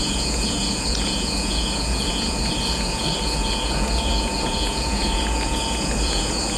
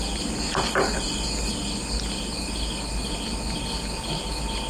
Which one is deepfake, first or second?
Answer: first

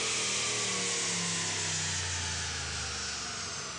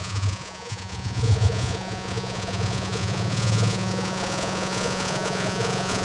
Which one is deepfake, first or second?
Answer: second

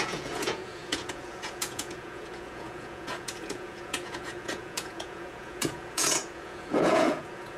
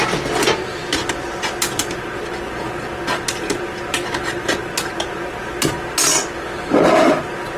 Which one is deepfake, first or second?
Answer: first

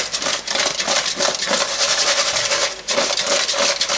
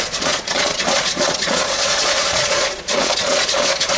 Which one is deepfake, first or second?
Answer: second